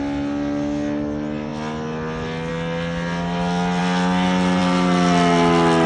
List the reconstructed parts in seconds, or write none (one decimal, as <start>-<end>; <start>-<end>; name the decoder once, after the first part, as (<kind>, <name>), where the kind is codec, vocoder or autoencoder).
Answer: none